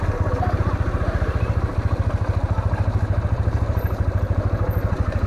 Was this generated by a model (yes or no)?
yes